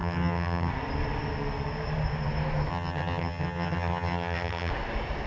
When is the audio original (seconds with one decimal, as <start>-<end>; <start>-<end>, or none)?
0.7-2.7; 4.7-5.3